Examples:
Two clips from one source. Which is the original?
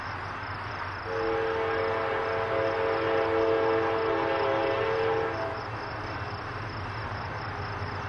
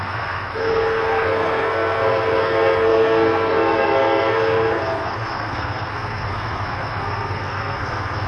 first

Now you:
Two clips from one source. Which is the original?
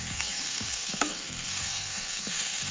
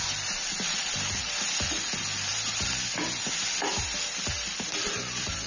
second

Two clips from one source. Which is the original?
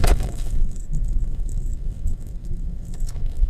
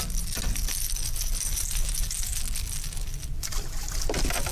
second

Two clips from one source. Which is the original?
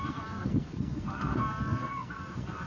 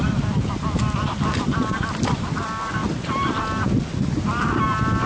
second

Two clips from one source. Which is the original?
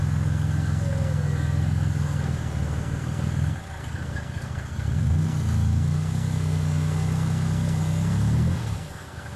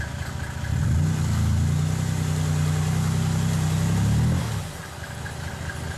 second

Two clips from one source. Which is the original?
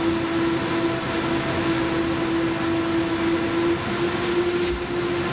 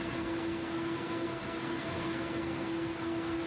first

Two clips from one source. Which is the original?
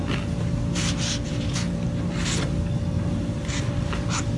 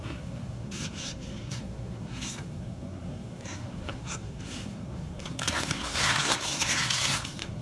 first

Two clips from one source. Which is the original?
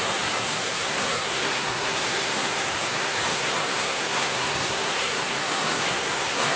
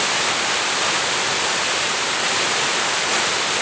second